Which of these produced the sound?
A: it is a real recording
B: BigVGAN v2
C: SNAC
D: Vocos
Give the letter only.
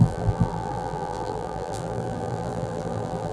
B